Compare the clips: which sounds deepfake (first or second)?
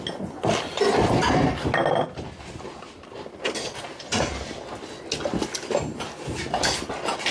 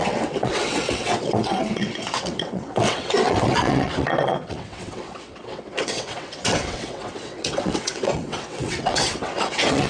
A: second